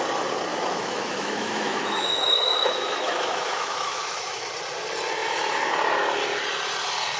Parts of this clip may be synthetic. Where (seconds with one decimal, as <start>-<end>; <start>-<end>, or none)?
0.5-4.5